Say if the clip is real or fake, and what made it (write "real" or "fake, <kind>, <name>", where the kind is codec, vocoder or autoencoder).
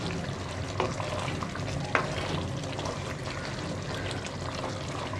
real